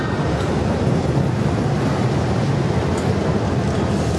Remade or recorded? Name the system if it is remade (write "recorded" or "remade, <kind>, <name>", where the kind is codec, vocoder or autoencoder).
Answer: recorded